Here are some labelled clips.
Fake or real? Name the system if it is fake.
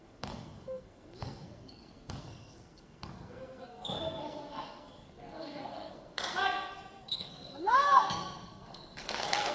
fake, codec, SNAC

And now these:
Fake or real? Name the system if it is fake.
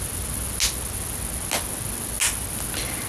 real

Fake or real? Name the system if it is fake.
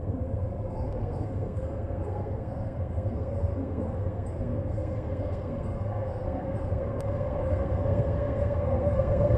fake, codec, SNAC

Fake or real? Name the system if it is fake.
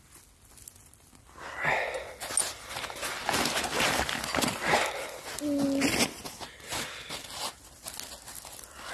real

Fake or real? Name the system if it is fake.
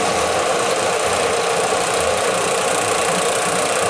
fake, vocoder, BigVGAN v2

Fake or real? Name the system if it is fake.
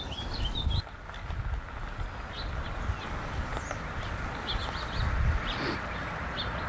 real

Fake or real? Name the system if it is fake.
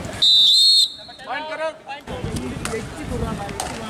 real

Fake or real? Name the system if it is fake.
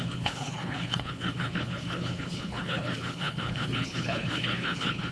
fake, codec, HILCodec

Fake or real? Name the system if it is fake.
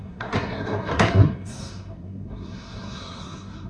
fake, codec, SNAC